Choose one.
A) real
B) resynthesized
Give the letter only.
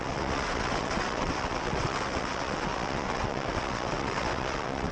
B